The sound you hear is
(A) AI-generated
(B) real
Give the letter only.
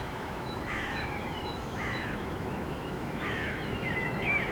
A